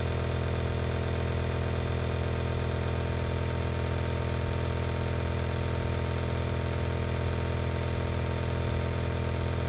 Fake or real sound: real